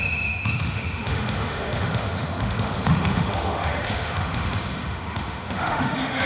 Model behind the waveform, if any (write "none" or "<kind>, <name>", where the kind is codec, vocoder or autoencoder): autoencoder, DAC-VAE